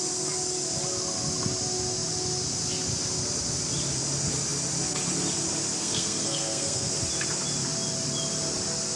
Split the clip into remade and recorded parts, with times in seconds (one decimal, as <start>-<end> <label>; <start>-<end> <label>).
0.0-5.8 recorded; 5.8-6.9 remade; 6.9-9.0 recorded